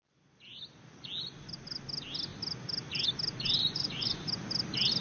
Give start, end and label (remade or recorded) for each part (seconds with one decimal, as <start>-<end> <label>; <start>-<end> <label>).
0.0-3.6 recorded; 3.6-4.3 remade; 4.3-5.0 recorded